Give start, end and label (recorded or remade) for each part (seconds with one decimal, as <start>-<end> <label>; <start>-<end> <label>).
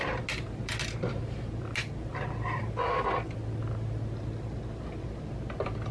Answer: 0.0-5.9 recorded